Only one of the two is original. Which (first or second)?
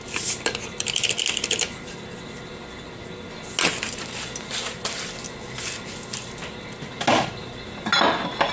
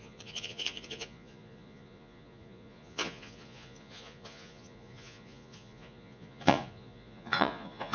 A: first